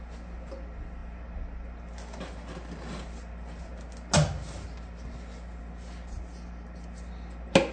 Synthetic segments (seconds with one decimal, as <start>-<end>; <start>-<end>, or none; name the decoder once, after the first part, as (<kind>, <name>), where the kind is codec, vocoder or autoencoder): none